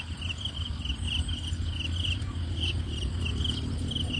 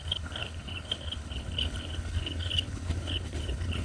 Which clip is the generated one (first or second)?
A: second